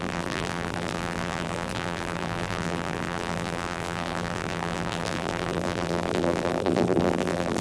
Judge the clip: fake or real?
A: fake